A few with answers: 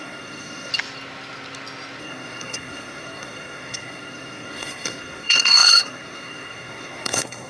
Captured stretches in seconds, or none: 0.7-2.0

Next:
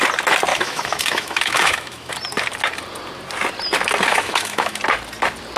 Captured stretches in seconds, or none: 0.0-0.5; 2.1-4.1; 4.8-5.6

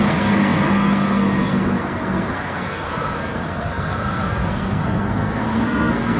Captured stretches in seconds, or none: none

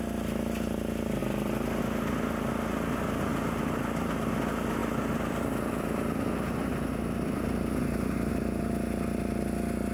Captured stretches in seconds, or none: 0.0-1.2; 1.8-4.8; 8.3-9.9

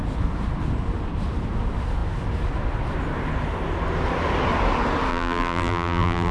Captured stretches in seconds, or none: 0.0-5.1

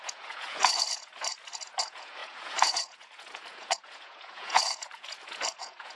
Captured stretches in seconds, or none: none

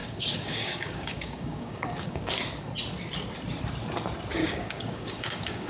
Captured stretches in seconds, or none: 2.3-4.4